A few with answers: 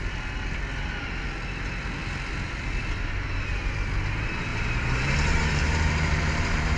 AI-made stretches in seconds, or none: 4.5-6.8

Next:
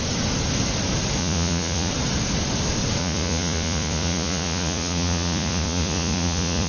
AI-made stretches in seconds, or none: 1.2-1.9; 3.0-6.7

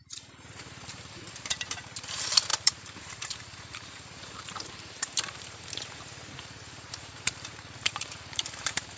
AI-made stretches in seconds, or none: 0.0-9.0

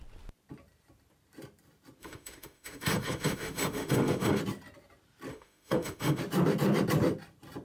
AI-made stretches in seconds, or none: 2.0-4.4; 5.3-6.2